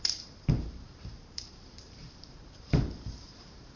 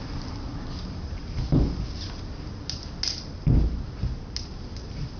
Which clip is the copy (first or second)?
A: first